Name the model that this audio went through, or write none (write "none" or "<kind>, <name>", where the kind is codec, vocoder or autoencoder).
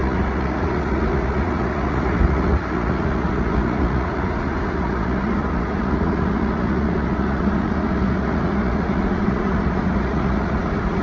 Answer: vocoder, Vocos